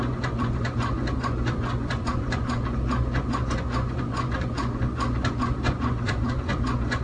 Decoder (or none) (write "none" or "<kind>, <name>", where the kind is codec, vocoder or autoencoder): vocoder, Vocos